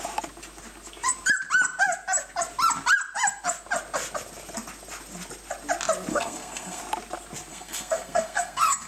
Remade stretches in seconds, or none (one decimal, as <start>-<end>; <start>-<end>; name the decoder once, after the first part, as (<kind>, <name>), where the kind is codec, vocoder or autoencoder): 6.1-6.8 (codec, SNAC); 7.5-8.9